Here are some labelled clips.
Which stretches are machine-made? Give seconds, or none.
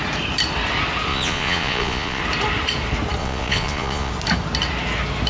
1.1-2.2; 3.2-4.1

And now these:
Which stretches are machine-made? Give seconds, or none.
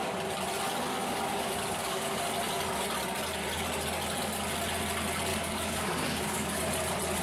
1.0-2.2; 5.3-6.6